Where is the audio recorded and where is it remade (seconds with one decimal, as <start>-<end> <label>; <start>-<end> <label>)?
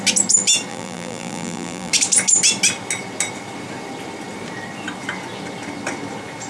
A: 0.0-0.7 recorded; 0.7-1.9 remade; 1.9-6.5 recorded